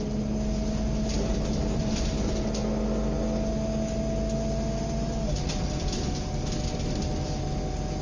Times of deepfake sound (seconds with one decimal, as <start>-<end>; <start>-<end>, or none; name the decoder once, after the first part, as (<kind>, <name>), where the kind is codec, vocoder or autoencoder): 1.3-2.1 (vocoder, BigVGAN v2)